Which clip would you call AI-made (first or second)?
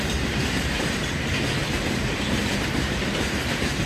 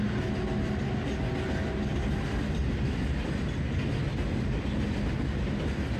first